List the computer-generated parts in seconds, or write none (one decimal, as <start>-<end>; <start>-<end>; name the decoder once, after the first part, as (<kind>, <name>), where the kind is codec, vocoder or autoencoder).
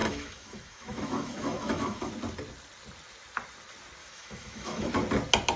0.0-2.1 (autoencoder, DAC-VAE); 4.0-4.9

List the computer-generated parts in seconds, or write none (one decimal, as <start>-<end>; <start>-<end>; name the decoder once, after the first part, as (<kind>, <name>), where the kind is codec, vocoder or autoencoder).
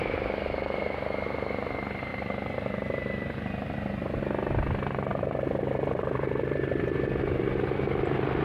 2.1-4.2 (vocoder, BigVGAN v2); 5.1-8.4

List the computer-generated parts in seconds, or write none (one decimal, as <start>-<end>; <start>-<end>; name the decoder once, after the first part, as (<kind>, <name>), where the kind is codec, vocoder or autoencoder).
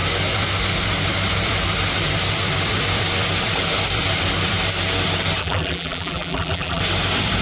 5.4-6.8 (vocoder, BigVGAN v2)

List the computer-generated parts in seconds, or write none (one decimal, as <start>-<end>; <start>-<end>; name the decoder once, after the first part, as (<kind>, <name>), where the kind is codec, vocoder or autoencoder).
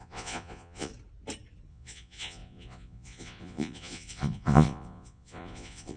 0.0-0.9 (vocoder, Vocos); 1.7-6.0